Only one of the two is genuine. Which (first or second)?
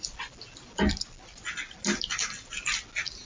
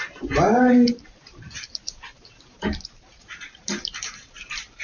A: first